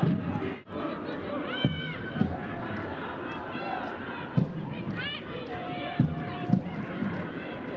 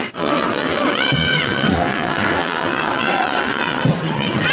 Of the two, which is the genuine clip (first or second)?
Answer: first